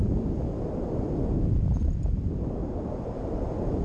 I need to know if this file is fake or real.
real